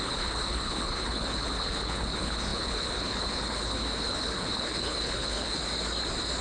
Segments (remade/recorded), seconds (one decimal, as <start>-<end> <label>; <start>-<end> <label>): 0.0-5.6 remade; 5.6-6.4 recorded